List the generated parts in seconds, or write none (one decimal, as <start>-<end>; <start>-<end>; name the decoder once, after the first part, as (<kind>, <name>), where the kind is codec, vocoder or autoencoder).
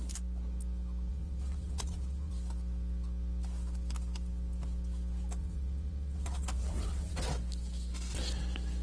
1.1-2.3 (vocoder, WaveNeXt); 5.4-7.3